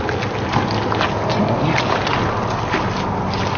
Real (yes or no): yes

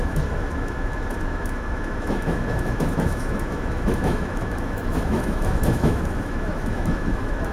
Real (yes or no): no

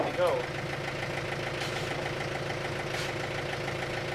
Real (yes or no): yes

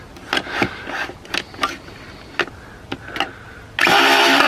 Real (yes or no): yes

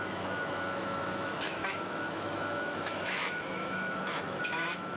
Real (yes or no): no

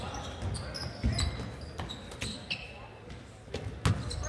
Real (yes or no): yes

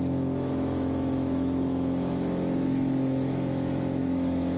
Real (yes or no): no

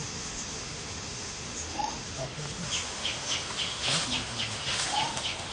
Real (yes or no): no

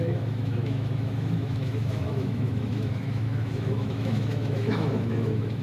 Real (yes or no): no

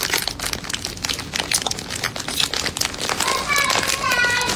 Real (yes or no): yes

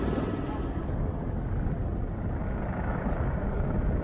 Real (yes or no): yes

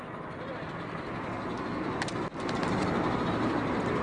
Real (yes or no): yes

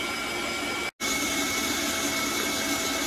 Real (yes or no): yes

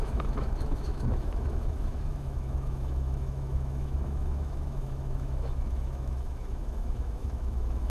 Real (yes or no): no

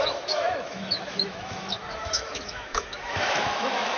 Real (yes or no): no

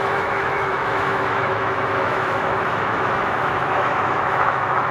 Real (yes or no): no